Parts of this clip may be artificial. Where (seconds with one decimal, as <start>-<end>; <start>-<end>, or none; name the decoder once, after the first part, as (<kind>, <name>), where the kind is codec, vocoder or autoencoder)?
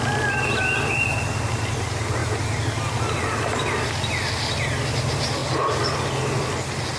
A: none